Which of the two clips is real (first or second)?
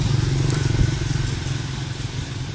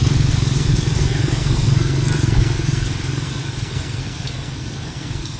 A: first